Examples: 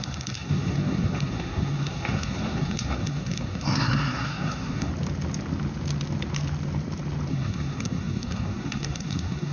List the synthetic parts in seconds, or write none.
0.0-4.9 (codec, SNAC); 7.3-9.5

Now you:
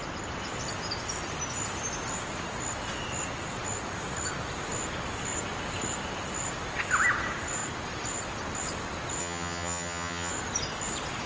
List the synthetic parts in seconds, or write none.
9.2-10.3 (vocoder, HiFi-GAN)

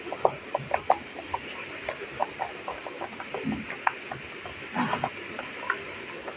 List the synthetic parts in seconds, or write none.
none

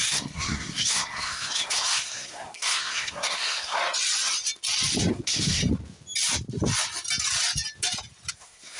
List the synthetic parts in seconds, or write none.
0.0-3.8 (codec, SNAC); 5.1-5.6; 8.3-8.8